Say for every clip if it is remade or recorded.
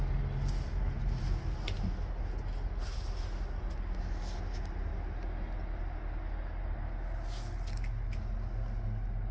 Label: recorded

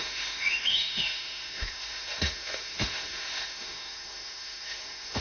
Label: remade